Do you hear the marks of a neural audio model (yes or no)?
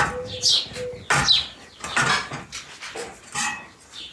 no